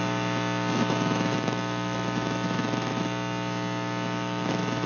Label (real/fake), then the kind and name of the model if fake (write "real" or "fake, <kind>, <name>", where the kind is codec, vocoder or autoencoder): fake, autoencoder, DAC-VAE